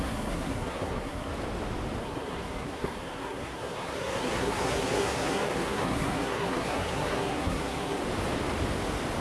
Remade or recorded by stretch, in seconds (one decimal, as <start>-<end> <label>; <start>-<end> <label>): 0.0-1.3 remade; 1.3-2.0 recorded; 2.0-8.0 remade; 8.0-9.2 recorded